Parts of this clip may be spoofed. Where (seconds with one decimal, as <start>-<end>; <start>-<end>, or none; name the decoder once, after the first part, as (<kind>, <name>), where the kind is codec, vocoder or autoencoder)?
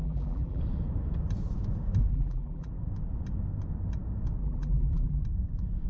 0.0-0.6 (vocoder, BigVGAN v2); 2.1-2.7; 4.4-5.2